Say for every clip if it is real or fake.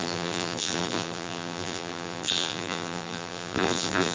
fake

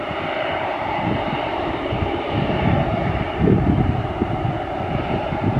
fake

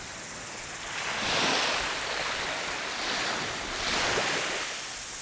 real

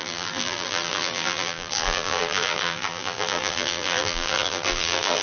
fake